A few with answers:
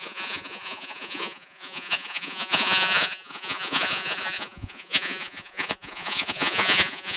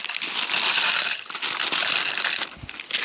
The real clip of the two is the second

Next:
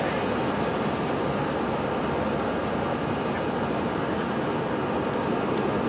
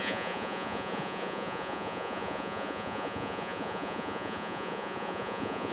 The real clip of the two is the first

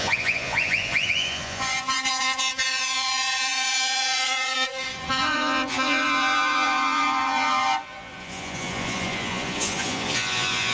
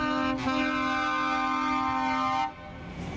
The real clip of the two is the second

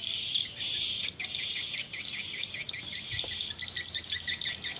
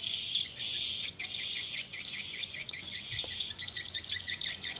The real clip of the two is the first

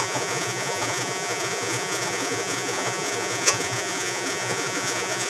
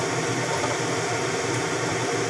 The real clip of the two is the second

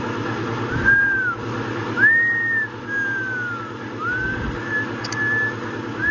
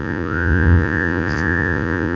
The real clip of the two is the first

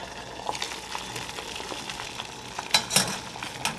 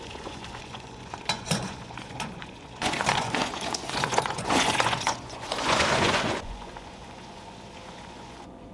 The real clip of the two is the first